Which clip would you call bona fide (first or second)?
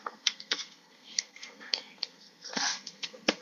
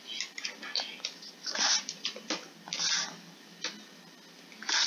second